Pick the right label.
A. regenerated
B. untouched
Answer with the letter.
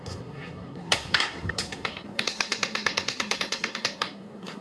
A